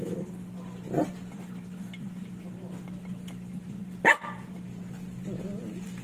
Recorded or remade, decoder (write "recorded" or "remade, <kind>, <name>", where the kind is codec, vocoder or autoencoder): recorded